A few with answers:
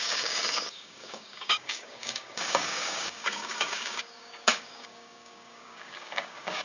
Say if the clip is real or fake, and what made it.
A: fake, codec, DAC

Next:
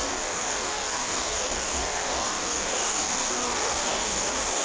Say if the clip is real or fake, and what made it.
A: fake, codec, DAC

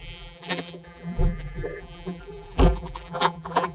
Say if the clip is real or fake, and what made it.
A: fake, vocoder, BigVGAN v2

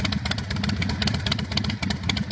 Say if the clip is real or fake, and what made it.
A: real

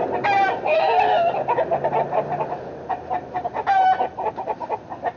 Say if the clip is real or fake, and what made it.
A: real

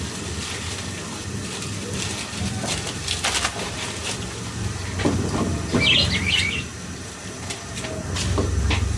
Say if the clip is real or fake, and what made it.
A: fake, vocoder, BigVGAN v2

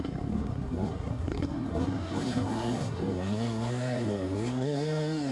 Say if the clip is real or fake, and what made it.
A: fake, codec, SNAC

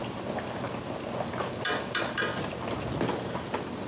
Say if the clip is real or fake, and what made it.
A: real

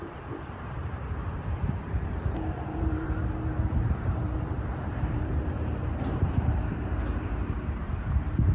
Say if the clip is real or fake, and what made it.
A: fake, vocoder, BigVGAN v2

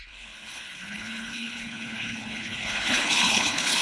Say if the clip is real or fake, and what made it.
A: fake, codec, HILCodec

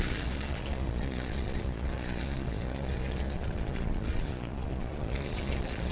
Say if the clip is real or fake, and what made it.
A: fake, vocoder, Vocos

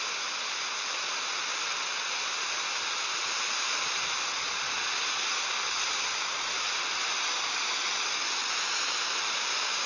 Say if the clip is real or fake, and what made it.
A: real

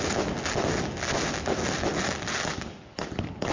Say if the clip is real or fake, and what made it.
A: real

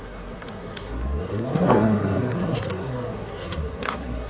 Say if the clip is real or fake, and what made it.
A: fake, codec, SNAC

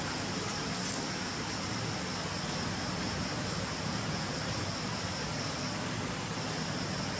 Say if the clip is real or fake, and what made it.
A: real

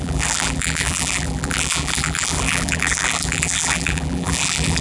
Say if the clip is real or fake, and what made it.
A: fake, vocoder, BigVGAN v2